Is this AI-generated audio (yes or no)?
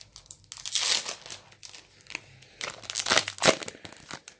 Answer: no